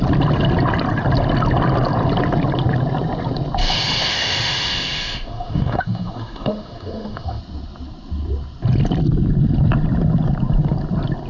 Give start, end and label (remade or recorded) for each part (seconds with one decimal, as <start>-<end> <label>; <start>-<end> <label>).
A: 0.0-3.6 recorded; 3.6-7.4 remade; 7.4-11.3 recorded